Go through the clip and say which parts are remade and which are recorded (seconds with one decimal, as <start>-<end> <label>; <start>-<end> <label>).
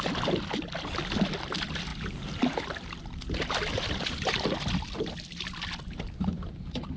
0.0-7.0 recorded